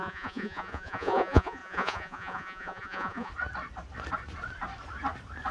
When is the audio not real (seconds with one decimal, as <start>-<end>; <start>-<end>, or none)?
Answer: 0.0-3.3